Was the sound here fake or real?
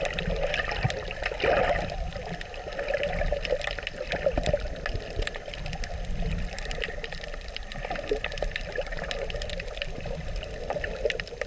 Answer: real